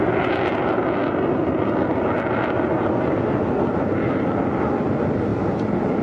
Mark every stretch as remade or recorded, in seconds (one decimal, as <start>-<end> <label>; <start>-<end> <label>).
0.0-6.0 recorded